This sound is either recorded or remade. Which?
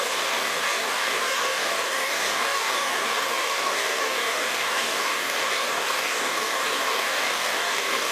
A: remade